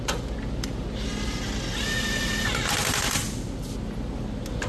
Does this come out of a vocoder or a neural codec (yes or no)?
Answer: no